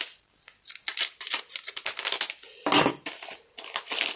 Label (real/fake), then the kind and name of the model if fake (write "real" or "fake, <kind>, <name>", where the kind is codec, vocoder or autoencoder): real